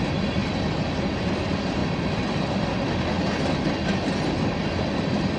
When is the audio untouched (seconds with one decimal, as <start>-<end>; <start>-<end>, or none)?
0.0-5.4

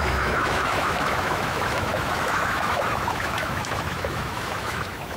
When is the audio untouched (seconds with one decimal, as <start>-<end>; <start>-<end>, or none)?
none